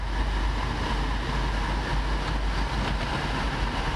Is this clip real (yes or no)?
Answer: yes